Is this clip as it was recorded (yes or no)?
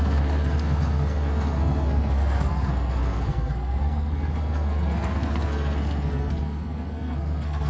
no